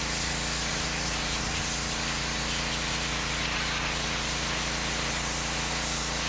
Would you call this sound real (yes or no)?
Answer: yes